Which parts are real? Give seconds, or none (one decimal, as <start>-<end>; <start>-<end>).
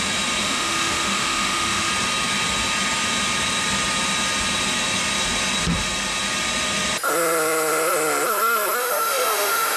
0.0-0.4; 1.9-8.8